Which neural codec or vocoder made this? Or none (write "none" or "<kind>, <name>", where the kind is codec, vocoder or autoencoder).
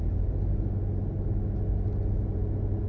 none